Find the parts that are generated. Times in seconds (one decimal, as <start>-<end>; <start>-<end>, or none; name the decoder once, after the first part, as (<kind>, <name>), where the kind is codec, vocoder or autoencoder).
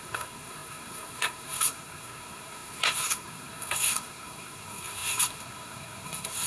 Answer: 0.0-6.5 (codec, SNAC)